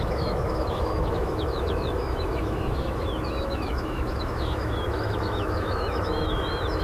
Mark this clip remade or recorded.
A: remade